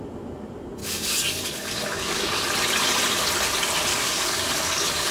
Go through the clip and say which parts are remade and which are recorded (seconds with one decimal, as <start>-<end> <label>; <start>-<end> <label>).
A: 0.0-0.8 recorded; 0.8-2.4 remade; 2.4-3.9 recorded; 3.9-5.1 remade